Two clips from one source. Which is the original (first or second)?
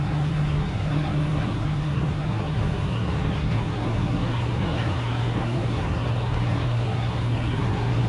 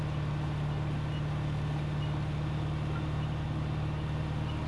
second